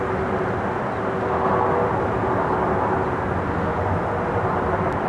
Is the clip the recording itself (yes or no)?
yes